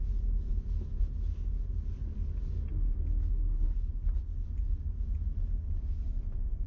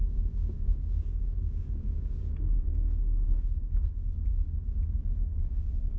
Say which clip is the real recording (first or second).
first